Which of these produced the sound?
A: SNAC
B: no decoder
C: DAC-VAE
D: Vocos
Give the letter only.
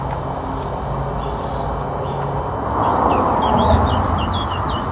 B